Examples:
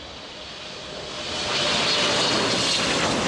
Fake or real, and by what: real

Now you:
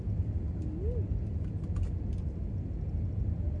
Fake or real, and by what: real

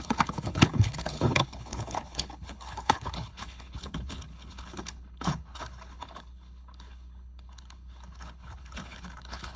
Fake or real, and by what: fake, codec, HILCodec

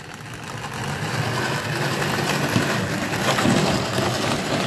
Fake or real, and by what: real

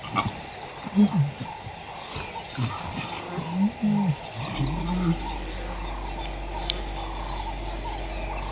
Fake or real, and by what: real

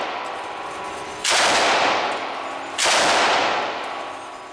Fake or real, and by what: real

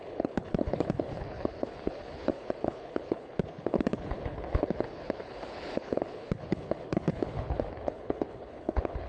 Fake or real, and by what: fake, codec, HILCodec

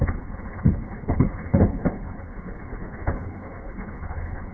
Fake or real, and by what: fake, codec, HILCodec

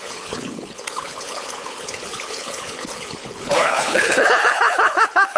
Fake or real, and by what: fake, codec, HILCodec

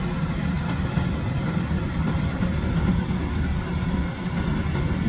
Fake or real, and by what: real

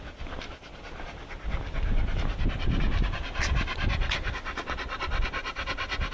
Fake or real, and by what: real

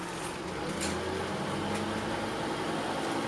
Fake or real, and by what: real